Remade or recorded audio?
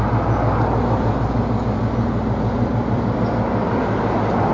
recorded